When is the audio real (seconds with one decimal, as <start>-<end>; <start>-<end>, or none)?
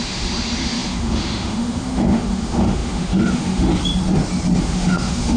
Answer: 3.7-4.6